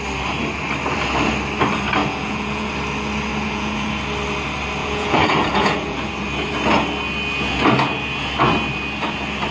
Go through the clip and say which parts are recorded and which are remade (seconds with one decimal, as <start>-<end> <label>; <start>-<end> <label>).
0.0-2.0 recorded; 2.0-2.7 remade; 2.7-3.3 recorded; 3.3-3.9 remade; 3.9-4.8 recorded; 4.8-6.1 remade; 6.1-9.5 recorded